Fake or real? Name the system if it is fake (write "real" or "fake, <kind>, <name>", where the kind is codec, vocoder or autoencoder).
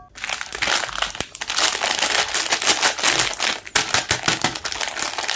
real